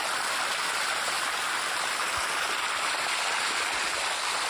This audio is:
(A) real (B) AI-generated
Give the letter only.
A